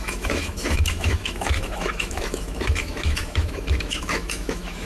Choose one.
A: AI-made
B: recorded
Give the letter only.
A